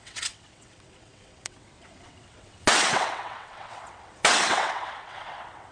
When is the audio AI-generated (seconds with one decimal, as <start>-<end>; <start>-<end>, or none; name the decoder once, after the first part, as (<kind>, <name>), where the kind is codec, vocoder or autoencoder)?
0.0-5.7 (vocoder, WaveNeXt)